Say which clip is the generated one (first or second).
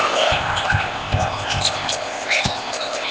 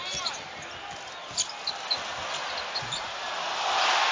first